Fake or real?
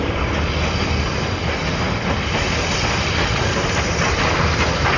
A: real